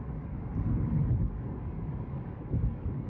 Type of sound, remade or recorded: remade